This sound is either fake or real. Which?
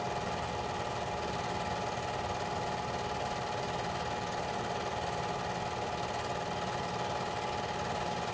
real